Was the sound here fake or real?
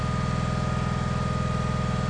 real